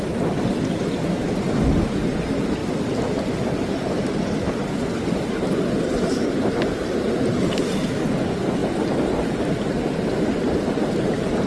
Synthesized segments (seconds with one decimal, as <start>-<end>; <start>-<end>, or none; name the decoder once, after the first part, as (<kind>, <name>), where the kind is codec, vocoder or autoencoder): none